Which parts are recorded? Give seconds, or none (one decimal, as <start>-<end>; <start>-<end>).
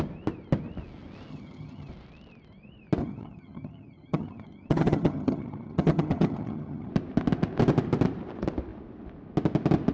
0.0-1.3; 1.9-3.0; 6.9-9.9